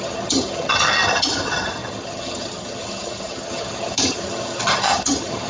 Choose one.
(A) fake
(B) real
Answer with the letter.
A